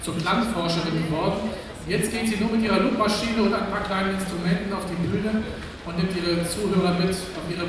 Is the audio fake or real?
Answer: real